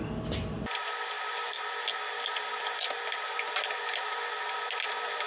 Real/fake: real